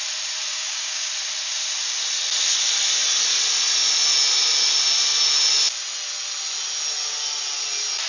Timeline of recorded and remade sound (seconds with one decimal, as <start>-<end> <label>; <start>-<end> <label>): 0.0-0.5 recorded; 0.5-1.1 remade; 1.1-8.1 recorded